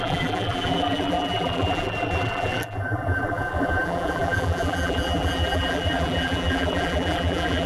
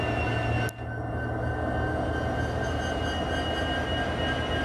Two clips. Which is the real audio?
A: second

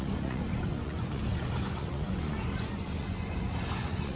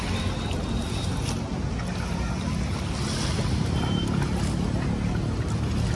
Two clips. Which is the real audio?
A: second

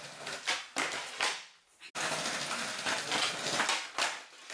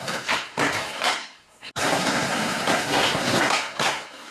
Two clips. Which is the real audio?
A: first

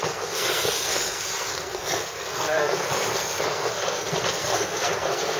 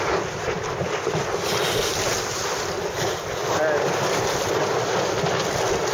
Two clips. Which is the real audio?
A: second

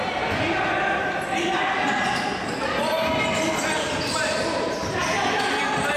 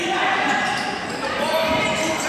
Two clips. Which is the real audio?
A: first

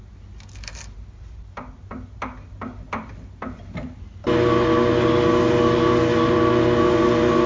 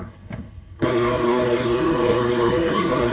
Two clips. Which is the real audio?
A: first